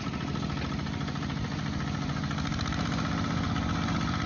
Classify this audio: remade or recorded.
recorded